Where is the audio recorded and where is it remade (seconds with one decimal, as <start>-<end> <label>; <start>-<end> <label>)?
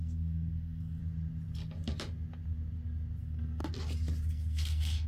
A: 0.0-1.0 remade; 1.0-3.2 recorded; 3.2-3.6 remade; 3.6-4.3 recorded; 4.3-5.1 remade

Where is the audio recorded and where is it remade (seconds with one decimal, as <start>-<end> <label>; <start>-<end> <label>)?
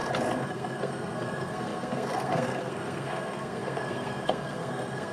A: 0.0-0.5 recorded; 0.5-5.1 remade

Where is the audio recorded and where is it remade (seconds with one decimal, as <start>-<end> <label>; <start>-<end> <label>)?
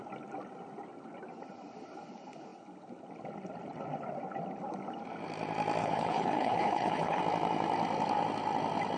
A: 0.0-5.8 recorded; 5.8-7.2 remade; 7.2-9.0 recorded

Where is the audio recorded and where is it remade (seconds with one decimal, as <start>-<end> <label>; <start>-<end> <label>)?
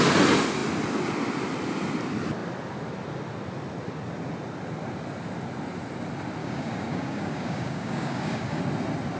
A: 0.0-6.4 recorded; 6.4-8.6 remade; 8.6-9.2 recorded